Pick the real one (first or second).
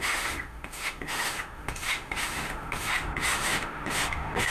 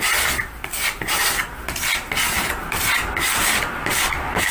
second